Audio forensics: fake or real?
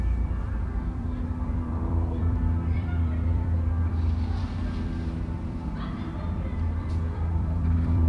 fake